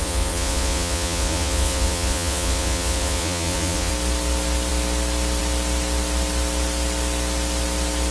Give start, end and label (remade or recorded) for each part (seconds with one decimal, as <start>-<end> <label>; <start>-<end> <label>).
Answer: 0.0-3.9 remade; 3.9-8.1 recorded